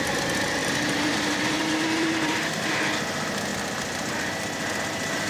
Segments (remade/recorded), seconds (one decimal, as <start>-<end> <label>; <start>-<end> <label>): 0.0-0.6 recorded; 0.6-2.8 remade; 2.8-5.3 recorded